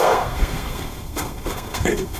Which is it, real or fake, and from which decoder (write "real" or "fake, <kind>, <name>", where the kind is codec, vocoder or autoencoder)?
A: fake, codec, SNAC